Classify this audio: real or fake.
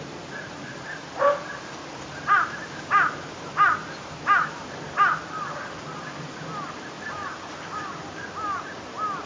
real